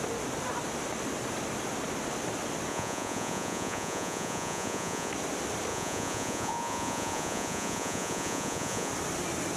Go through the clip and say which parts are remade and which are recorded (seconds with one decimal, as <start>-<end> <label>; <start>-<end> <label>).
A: 0.0-2.7 recorded; 2.7-5.1 remade; 5.1-5.7 recorded; 5.7-8.9 remade; 8.9-9.6 recorded